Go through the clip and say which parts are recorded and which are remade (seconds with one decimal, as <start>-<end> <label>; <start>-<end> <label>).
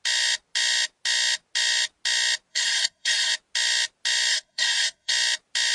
0.0-2.5 recorded; 2.5-3.3 remade; 3.3-4.3 recorded; 4.3-5.1 remade; 5.1-5.7 recorded